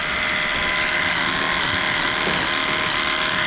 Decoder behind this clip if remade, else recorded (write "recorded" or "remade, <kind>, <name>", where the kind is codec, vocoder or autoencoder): recorded